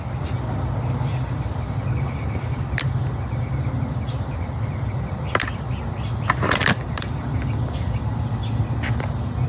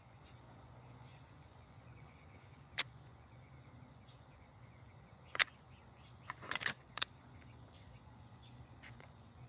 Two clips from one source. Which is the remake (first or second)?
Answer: second